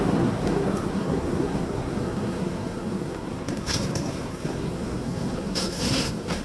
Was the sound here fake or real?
fake